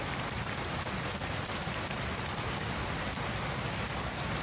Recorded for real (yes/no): yes